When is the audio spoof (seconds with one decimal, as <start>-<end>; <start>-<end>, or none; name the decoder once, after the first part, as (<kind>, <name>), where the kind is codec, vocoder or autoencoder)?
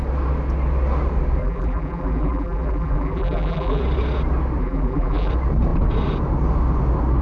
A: 1.4-3.8 (vocoder, BigVGAN v2); 4.6-5.3